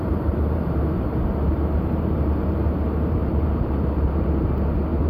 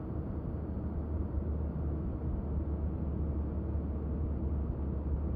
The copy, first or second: first